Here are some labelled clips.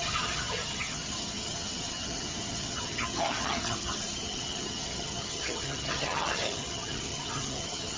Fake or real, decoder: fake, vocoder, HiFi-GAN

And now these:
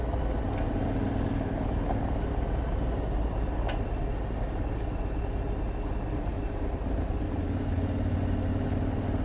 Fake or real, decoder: real